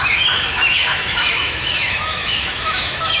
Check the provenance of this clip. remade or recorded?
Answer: remade